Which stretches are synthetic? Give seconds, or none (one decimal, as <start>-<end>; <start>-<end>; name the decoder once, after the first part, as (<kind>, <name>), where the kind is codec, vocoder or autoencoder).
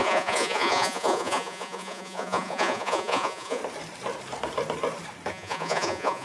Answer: 0.0-3.6 (vocoder, Vocos); 5.3-6.2